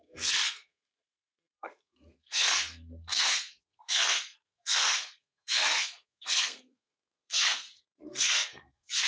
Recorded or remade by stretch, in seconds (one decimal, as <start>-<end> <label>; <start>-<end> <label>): 0.0-9.1 remade